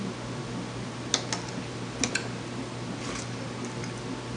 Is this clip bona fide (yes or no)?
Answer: yes